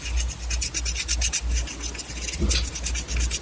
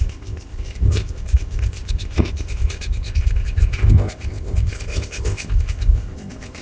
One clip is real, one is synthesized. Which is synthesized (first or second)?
second